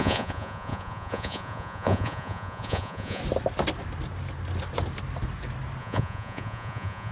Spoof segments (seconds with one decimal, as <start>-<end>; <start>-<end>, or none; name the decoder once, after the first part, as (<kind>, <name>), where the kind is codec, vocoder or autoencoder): 0.0-3.2 (vocoder, Vocos); 5.8-7.1